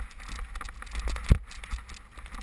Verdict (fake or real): real